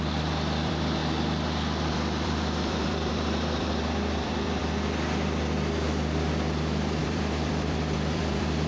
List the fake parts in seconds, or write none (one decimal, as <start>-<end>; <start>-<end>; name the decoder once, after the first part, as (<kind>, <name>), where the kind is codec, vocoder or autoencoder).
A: 0.0-1.0 (vocoder, BigVGAN v2); 1.9-4.6; 7.0-8.7